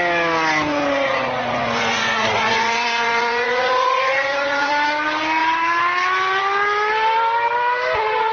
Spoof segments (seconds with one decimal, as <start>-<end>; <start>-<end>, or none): 1.1-4.7